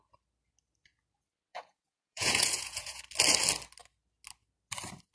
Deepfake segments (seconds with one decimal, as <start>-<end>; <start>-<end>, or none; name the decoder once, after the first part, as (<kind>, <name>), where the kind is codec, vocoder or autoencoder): 1.5-3.0 (vocoder, Vocos)